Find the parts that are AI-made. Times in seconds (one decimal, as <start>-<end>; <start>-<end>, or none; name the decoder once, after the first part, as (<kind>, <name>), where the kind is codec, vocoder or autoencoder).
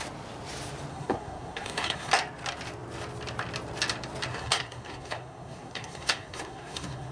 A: 0.9-2.1 (codec, SNAC); 4.3-7.1